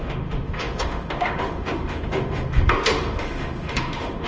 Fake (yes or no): yes